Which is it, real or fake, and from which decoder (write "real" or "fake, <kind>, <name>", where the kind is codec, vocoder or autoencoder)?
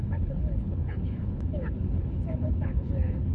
fake, codec, HILCodec